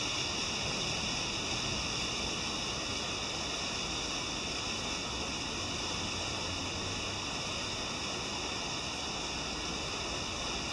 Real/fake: real